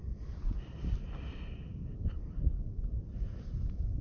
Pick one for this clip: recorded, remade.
recorded